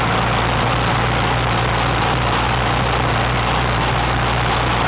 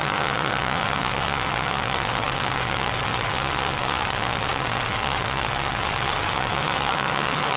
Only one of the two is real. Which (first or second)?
first